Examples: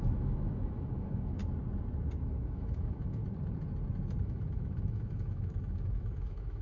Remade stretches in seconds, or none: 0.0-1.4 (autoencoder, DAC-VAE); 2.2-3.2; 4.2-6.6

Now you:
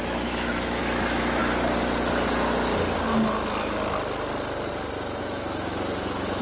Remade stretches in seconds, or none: 0.0-1.4 (autoencoder, DAC-VAE); 5.2-6.4

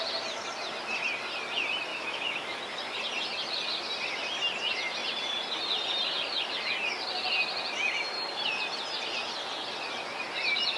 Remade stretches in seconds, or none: 1.9-2.6 (autoencoder, DAC-VAE)

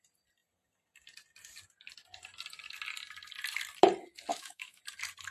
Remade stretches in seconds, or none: 4.3-4.8 (autoencoder, DAC-VAE)

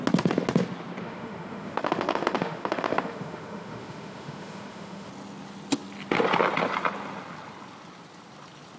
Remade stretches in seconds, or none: 1.0-5.1 (autoencoder, DAC-VAE)